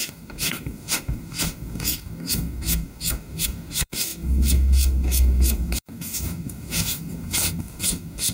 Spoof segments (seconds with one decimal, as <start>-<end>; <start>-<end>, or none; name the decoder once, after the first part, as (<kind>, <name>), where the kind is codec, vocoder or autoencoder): 0.0-8.3 (codec, DAC)